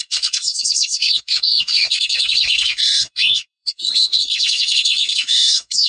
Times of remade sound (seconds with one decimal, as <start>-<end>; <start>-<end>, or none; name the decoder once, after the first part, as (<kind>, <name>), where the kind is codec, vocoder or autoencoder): 0.0-5.9 (codec, SNAC)